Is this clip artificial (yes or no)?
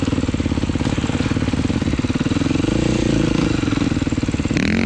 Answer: no